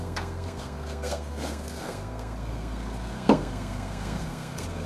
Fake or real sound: fake